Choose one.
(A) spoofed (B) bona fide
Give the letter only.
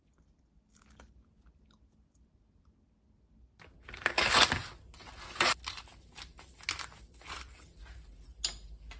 B